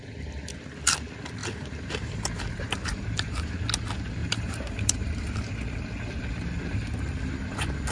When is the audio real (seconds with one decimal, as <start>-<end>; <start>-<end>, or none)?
0.0-1.4; 3.5-4.2; 5.5-7.9